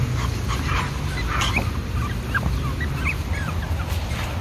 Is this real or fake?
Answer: real